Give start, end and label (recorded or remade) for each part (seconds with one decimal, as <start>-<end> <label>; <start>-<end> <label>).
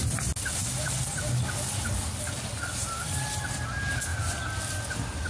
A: 0.0-0.6 recorded; 0.6-3.4 remade; 3.4-4.1 recorded; 4.1-5.3 remade